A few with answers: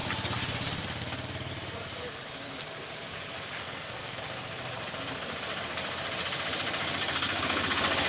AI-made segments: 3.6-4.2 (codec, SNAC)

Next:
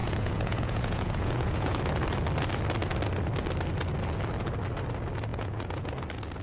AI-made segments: 0.0-1.8 (vocoder, Vocos); 5.3-5.9